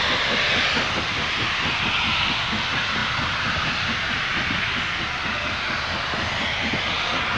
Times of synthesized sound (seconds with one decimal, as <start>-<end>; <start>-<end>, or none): none